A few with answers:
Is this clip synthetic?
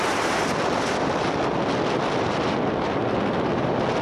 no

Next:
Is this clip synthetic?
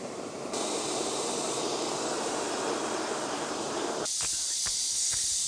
yes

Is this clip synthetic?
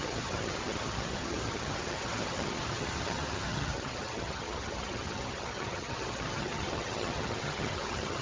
yes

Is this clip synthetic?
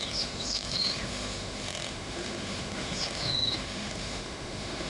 yes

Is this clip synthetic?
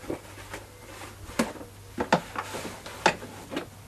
no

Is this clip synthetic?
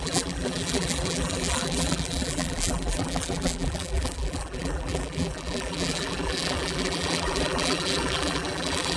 yes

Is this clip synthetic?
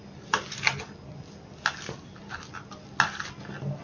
no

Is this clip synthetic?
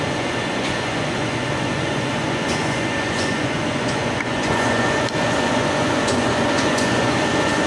yes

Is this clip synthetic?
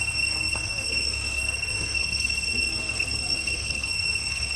yes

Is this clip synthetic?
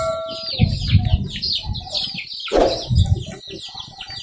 no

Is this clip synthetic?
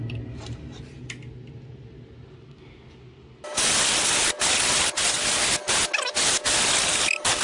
no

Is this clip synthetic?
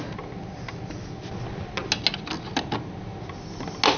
no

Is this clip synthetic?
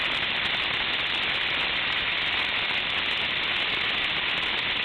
no